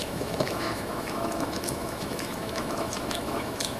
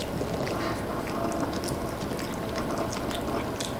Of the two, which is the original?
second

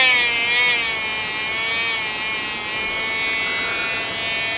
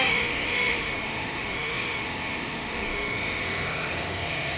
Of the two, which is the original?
first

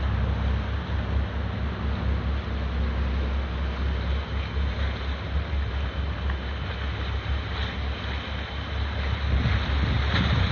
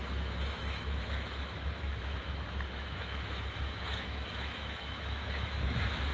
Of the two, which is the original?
first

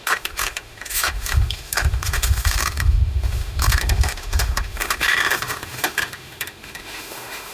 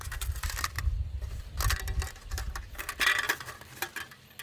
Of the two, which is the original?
second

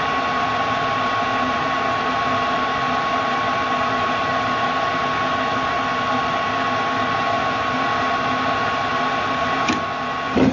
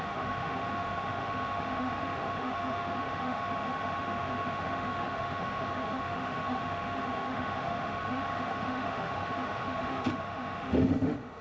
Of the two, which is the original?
first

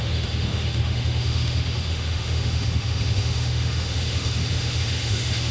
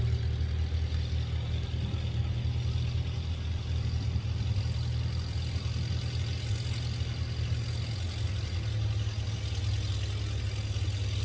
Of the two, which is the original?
second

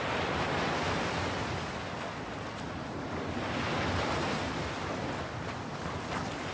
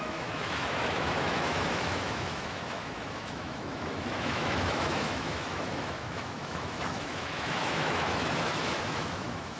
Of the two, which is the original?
first